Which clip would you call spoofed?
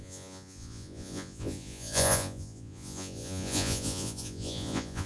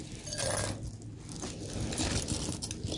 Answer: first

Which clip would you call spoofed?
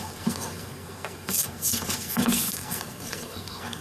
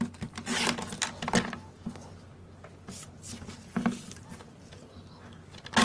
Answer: first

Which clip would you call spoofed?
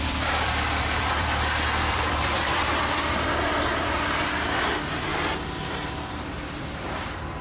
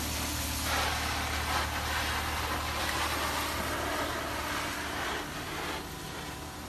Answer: first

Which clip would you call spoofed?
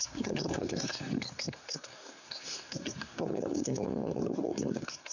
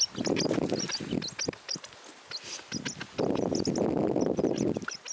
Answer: first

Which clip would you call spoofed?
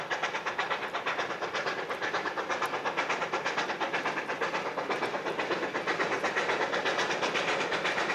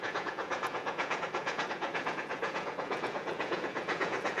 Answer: second